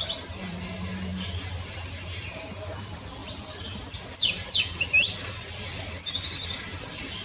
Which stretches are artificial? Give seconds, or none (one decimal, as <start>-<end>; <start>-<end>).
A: none